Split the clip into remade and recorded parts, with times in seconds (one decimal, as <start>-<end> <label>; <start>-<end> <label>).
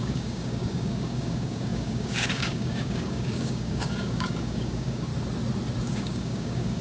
0.0-5.1 remade; 5.1-5.8 recorded; 5.8-6.8 remade